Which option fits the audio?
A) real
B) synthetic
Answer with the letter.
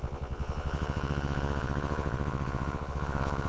B